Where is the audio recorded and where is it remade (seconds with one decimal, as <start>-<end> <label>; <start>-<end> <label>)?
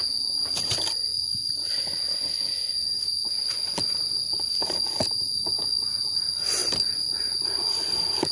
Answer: 0.0-6.6 recorded; 6.6-7.4 remade; 7.4-8.3 recorded